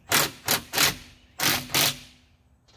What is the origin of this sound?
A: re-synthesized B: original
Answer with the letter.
B